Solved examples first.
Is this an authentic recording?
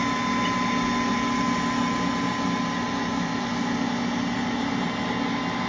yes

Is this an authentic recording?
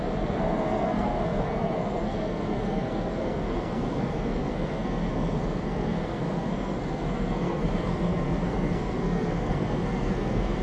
no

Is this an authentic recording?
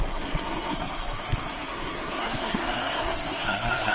no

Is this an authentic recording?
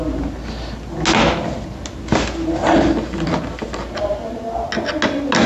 yes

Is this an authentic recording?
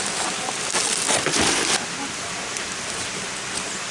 yes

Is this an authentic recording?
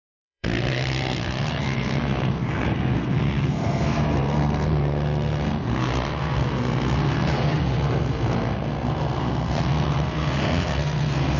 no